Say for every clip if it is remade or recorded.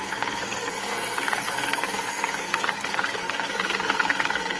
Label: remade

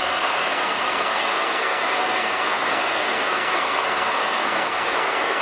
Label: remade